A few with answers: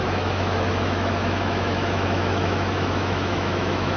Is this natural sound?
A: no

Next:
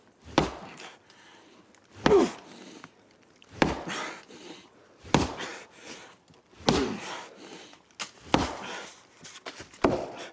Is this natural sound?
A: yes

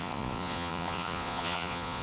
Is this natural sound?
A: no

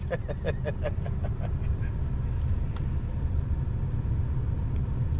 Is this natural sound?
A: yes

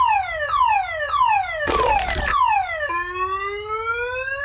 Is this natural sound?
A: yes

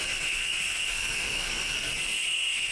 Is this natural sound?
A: no